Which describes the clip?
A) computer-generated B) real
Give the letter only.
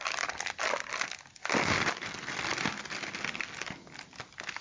B